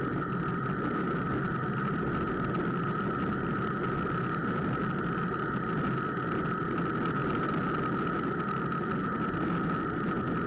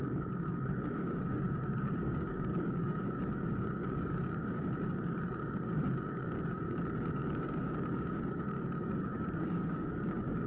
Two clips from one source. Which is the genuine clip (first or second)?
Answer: first